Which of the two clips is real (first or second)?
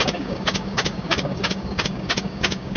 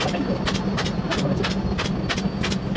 second